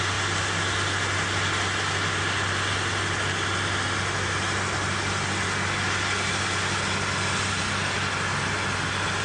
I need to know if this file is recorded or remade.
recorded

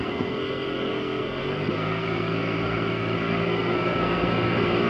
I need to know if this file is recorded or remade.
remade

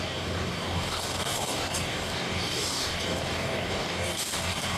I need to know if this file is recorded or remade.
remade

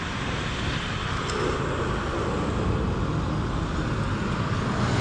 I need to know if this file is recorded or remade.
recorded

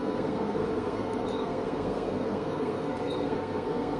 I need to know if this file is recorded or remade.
remade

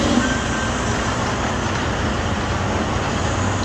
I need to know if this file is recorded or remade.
recorded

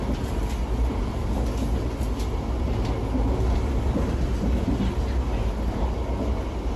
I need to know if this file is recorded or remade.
recorded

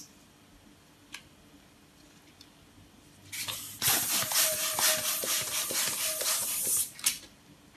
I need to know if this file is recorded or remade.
recorded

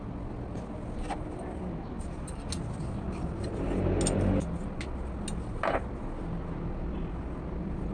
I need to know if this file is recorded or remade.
recorded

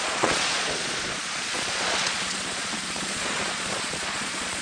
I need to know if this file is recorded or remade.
remade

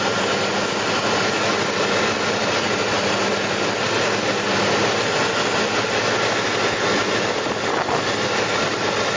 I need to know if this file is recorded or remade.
recorded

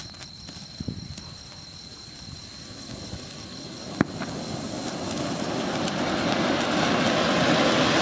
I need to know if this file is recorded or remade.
recorded